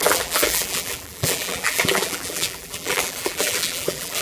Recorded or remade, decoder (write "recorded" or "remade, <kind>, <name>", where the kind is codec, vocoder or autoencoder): remade, vocoder, BigVGAN v2